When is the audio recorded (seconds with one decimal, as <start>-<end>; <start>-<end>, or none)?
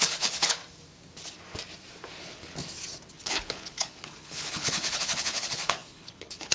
0.6-2.2; 2.6-3.1